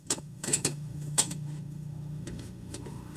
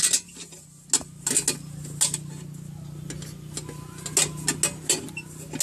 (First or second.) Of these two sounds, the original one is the second